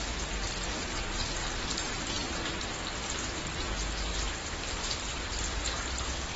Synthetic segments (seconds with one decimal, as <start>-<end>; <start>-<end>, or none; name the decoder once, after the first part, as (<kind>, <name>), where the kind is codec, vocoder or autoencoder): 2.2-3.4 (vocoder, BigVGAN v2); 4.1-5.6